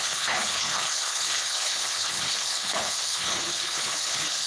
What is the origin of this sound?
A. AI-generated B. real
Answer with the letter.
A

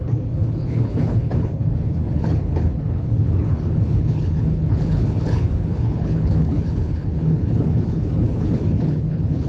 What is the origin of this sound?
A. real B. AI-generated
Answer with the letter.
B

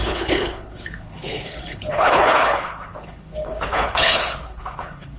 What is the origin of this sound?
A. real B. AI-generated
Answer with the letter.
B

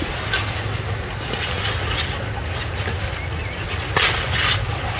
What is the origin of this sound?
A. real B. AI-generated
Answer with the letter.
A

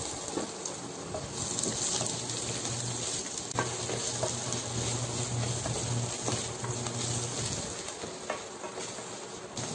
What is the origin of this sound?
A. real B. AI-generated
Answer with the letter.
A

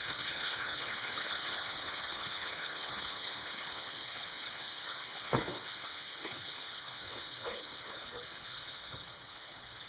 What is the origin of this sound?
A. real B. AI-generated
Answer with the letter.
B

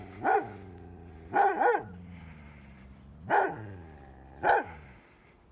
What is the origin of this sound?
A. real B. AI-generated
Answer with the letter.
A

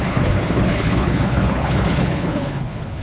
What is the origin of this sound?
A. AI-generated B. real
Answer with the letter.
A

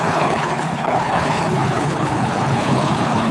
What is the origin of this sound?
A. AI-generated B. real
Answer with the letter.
A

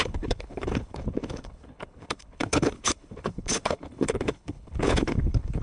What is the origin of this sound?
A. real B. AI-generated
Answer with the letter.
B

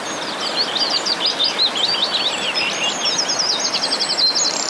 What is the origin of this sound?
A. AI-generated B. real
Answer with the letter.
B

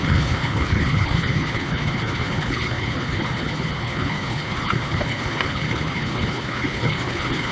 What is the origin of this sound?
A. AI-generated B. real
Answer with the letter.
A